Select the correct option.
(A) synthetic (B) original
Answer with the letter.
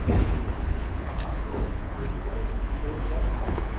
A